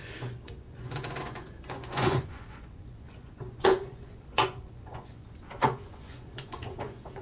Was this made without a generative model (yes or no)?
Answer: no